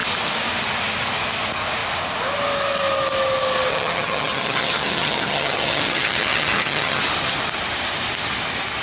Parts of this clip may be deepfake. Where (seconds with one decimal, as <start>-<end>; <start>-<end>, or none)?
3.7-7.0